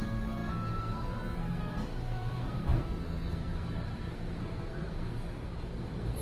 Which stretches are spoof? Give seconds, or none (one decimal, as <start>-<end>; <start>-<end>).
0.0-6.2